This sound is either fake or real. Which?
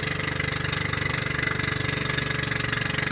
real